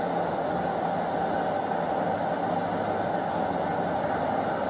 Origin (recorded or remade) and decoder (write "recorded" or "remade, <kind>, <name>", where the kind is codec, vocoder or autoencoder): recorded